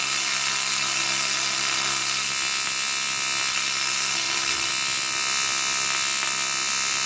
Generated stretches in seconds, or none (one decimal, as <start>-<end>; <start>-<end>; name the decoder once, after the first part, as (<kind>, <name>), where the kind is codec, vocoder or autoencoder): 0.0-2.3 (codec, SNAC); 3.5-4.7